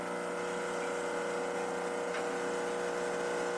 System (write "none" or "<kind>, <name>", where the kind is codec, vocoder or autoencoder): none